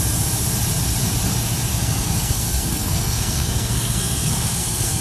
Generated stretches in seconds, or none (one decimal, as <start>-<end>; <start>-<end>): 1.7-5.0